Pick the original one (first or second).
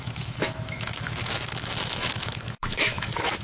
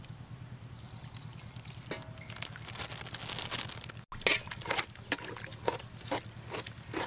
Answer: second